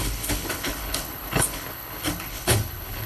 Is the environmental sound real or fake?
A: fake